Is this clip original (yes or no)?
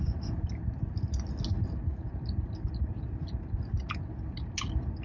yes